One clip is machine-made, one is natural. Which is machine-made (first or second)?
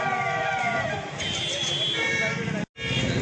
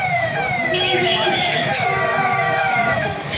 second